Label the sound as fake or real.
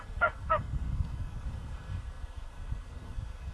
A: fake